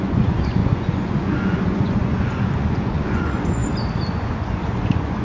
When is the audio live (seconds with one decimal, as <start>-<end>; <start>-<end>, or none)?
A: 3.6-4.1

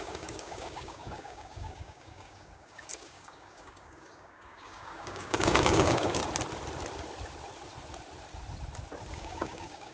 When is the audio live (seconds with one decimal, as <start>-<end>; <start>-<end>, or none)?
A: 6.2-9.1

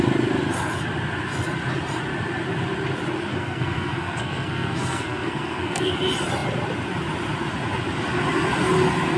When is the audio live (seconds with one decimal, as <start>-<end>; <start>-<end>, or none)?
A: 0.0-3.3; 5.9-9.2

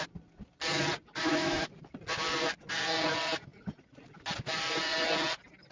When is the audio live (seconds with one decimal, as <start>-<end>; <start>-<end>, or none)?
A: 0.0-1.2; 1.7-5.7

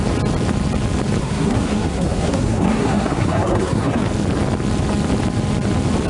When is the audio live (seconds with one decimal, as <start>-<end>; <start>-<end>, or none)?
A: 0.0-1.2; 4.0-6.1

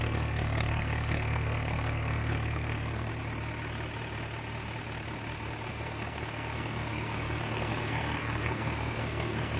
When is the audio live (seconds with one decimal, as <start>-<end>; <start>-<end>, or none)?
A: 3.1-5.7